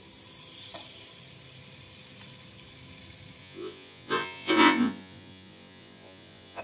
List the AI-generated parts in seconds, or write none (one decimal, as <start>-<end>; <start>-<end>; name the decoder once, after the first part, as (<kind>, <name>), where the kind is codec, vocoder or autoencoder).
3.4-6.6 (vocoder, Vocos)

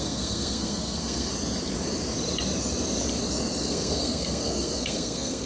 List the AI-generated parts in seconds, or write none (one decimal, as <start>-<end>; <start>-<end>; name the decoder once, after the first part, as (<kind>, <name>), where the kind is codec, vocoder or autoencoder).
0.0-1.3 (codec, SNAC); 3.6-5.5